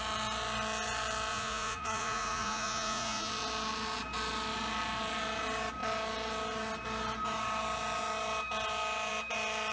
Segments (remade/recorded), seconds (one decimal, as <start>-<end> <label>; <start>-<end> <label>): 0.0-1.3 recorded; 1.3-3.3 remade; 3.3-9.7 recorded